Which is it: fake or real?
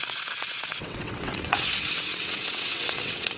fake